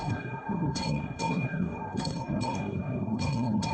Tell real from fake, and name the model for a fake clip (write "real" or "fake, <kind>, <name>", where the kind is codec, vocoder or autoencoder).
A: fake, codec, SNAC